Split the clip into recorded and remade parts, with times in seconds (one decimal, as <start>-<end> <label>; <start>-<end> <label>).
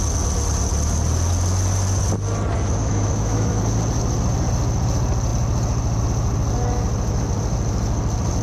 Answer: 0.0-2.8 recorded; 2.8-3.6 remade; 3.6-8.4 recorded